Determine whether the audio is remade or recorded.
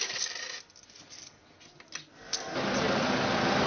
recorded